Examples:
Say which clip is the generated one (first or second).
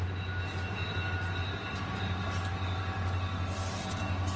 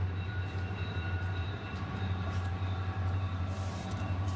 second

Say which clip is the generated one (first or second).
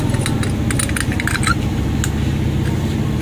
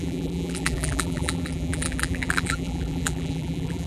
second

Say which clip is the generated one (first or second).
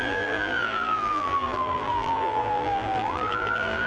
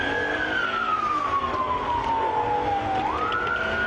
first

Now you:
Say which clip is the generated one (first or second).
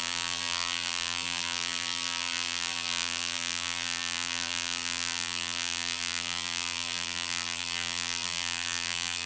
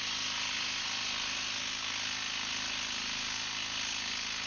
first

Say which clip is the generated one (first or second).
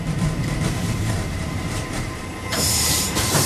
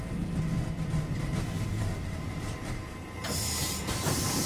first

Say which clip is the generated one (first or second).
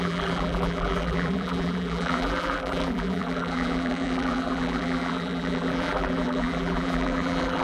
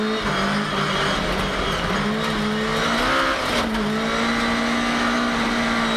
first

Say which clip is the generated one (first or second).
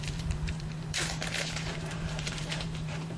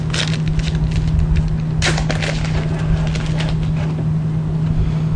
first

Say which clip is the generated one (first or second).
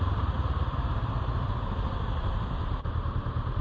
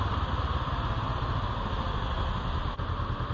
first